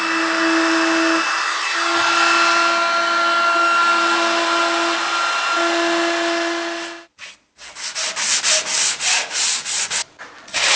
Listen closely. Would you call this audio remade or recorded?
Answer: recorded